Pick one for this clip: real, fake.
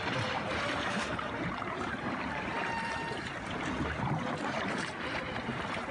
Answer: fake